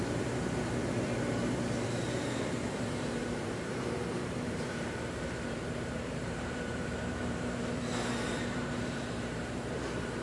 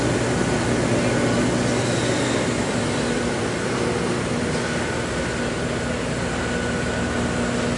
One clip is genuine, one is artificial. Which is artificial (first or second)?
first